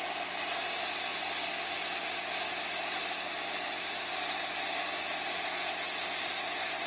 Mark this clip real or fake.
real